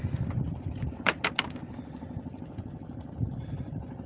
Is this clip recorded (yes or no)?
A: yes